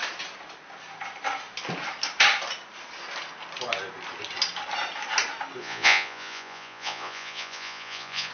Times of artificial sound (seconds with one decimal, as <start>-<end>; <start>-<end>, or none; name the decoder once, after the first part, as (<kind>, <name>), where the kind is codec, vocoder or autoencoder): 5.6-8.3 (vocoder, Vocos)